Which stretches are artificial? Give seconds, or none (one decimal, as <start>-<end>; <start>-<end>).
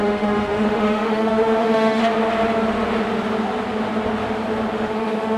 0.0-2.0; 4.7-5.4